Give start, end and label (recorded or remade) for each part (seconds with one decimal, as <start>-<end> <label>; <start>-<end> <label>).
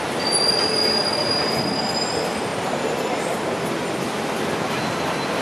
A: 0.0-2.5 recorded; 2.5-3.6 remade; 3.6-5.4 recorded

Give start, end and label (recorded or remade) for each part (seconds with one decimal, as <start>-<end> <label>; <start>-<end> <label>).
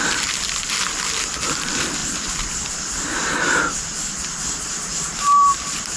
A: 0.0-4.9 recorded; 4.9-6.0 remade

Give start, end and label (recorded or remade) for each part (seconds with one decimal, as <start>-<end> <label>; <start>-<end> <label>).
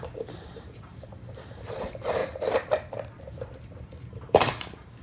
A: 0.0-2.2 remade; 2.2-3.8 recorded; 3.8-5.0 remade